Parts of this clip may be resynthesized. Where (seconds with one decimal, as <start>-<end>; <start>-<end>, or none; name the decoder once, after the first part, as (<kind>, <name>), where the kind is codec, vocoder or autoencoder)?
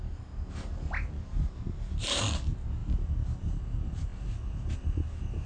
none